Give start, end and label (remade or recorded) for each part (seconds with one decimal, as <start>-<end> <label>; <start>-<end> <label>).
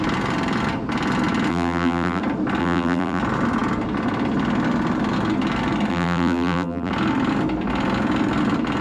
0.0-1.5 recorded; 1.5-2.2 remade; 2.2-2.6 recorded; 2.6-3.2 remade; 3.2-5.9 recorded; 5.9-6.9 remade; 6.9-8.8 recorded